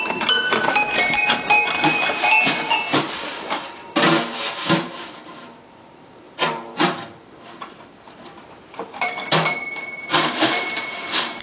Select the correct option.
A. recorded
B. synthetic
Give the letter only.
B